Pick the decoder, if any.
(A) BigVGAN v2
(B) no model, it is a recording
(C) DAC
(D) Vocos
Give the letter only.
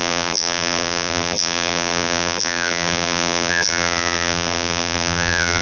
A